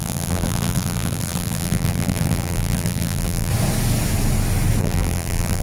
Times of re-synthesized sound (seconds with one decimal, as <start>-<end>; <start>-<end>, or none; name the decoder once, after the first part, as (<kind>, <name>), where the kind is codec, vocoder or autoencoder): 0.0-3.5 (vocoder, BigVGAN v2); 4.8-5.6